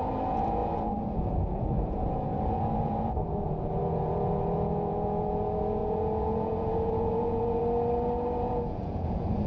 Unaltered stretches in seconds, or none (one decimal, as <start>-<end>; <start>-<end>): 7.6-8.4